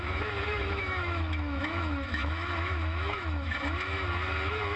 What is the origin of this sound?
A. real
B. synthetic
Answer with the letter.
B